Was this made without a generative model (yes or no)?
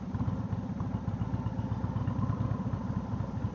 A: yes